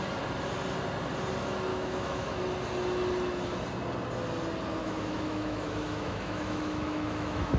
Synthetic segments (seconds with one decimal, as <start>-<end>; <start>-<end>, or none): 1.7-2.4; 4.8-7.6